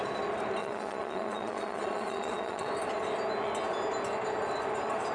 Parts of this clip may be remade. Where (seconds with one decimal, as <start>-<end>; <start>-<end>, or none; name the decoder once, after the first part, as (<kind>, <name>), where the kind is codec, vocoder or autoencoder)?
0.6-2.7 (vocoder, Vocos)